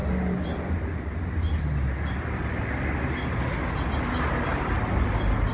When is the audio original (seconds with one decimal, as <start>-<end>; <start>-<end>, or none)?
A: 0.0-5.5